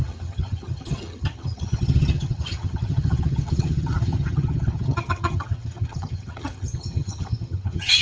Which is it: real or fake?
fake